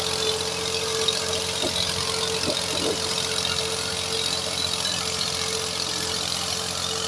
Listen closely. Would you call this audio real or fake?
real